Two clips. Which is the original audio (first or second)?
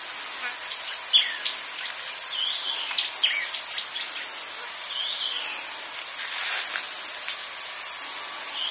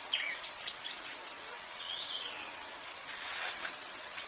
first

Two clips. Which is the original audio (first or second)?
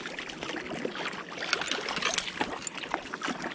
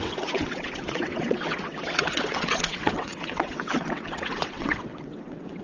first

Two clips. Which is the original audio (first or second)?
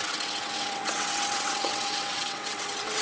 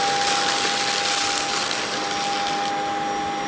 second